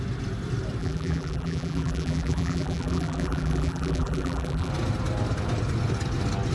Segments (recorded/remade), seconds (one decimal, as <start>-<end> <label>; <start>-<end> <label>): 0.0-0.8 recorded; 0.8-4.7 remade; 4.7-6.5 recorded